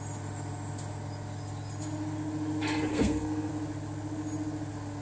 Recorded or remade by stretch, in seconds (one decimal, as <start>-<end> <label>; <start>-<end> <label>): 0.0-2.9 recorded; 2.9-3.5 remade; 3.5-5.0 recorded